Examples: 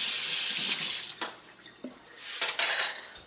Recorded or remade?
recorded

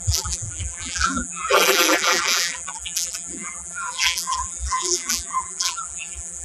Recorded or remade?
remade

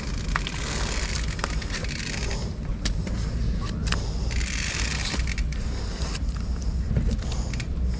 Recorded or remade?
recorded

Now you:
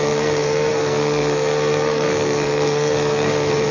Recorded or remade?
remade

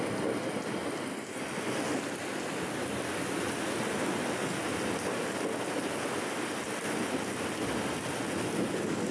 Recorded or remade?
recorded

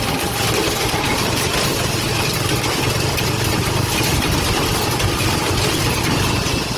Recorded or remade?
recorded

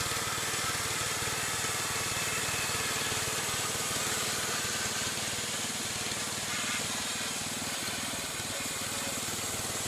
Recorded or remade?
recorded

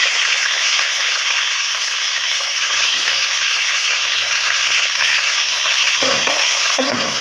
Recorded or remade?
remade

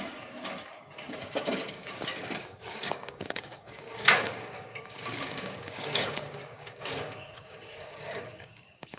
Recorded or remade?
remade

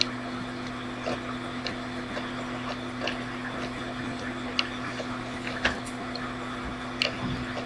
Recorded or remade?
recorded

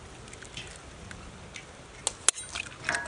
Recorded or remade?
recorded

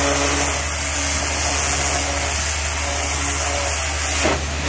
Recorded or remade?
recorded